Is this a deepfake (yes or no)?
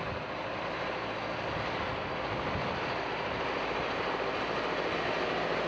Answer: no